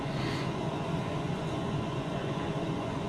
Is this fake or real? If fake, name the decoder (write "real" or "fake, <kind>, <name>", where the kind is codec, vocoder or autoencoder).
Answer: fake, vocoder, Vocos